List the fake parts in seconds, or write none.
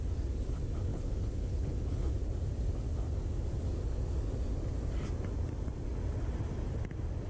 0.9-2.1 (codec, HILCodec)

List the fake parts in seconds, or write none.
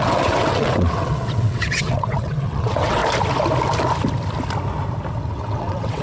0.0-3.0 (vocoder, WaveNeXt); 5.3-6.0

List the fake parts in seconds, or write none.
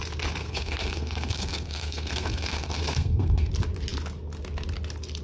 0.4-3.5 (codec, SNAC)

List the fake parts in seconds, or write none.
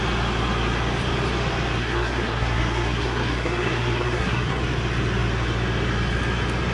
1.8-4.6 (codec, SNAC)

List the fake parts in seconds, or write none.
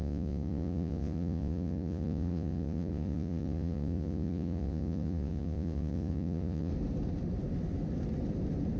0.0-6.7 (vocoder, Vocos)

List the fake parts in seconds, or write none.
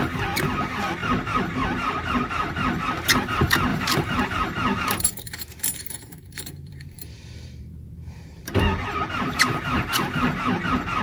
1.0-2.9 (vocoder, BigVGAN v2); 3.7-8.5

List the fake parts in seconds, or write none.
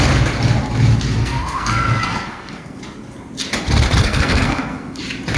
1.2-2.8 (codec, SNAC); 4.0-5.0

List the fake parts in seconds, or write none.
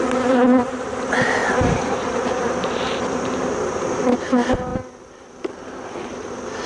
1.4-3.5 (vocoder, BigVGAN v2)